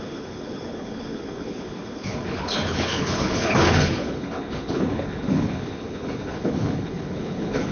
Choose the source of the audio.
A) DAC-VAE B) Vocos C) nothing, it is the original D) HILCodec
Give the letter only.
D